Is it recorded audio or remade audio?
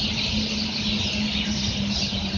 recorded